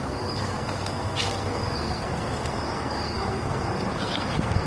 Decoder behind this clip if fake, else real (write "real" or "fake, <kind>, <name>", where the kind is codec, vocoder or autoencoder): fake, codec, SNAC